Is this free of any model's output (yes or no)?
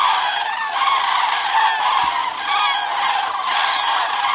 yes